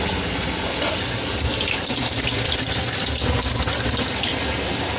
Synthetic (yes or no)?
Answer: no